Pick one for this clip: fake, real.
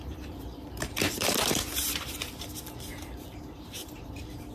fake